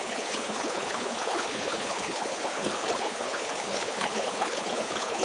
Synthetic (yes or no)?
yes